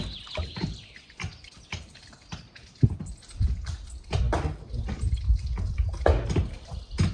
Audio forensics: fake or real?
real